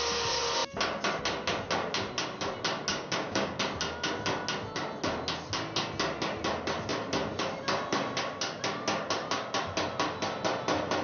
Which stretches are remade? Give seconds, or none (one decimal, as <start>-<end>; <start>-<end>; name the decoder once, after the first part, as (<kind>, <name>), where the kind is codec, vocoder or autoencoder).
2.9-3.6 (codec, DAC)